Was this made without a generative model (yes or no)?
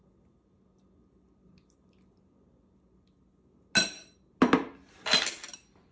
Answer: yes